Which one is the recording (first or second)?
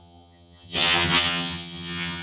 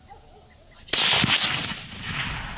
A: second